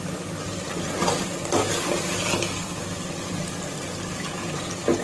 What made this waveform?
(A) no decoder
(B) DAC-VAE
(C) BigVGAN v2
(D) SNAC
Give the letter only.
A